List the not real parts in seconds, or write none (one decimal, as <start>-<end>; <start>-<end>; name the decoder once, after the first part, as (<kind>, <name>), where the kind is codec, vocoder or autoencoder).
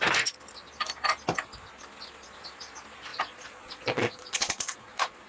3.1-5.3 (vocoder, Vocos)